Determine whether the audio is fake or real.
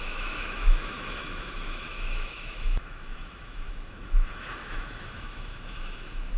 fake